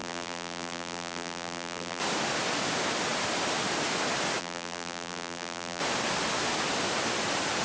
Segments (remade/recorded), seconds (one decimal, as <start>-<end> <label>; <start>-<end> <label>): 0.0-2.0 remade; 2.0-4.4 recorded; 4.4-5.8 remade; 5.8-7.6 recorded